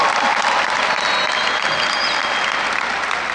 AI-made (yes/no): no